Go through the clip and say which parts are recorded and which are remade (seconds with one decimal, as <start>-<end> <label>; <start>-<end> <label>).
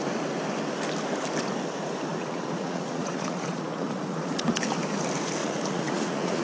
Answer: 0.0-2.1 recorded; 2.1-4.6 remade; 4.6-5.4 recorded; 5.4-6.4 remade